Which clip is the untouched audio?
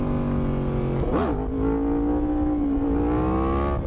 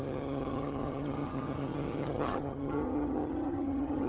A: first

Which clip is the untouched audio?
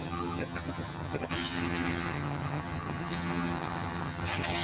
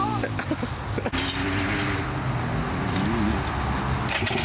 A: second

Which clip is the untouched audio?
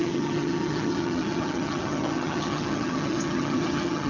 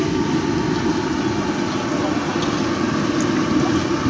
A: second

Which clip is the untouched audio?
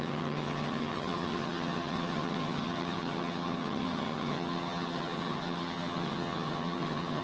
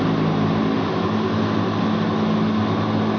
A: second